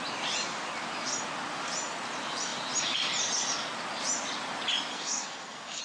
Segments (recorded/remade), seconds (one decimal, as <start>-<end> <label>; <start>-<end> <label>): 0.0-4.9 recorded; 4.9-5.8 remade